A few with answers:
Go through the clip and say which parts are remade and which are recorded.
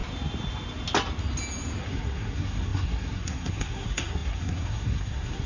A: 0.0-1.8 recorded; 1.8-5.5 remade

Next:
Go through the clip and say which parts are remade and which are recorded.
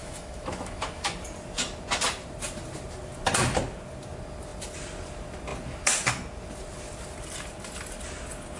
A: 0.0-1.1 remade; 1.1-8.6 recorded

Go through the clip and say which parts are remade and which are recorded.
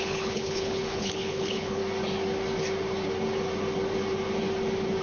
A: 0.0-1.8 remade; 1.8-5.0 recorded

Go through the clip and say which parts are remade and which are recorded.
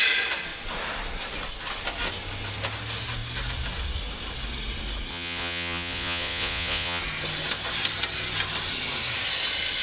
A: 0.0-5.1 recorded; 5.1-7.0 remade; 7.0-9.8 recorded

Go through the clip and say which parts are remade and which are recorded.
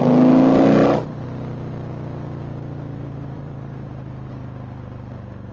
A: 0.0-2.5 recorded; 2.5-3.9 remade; 3.9-5.5 recorded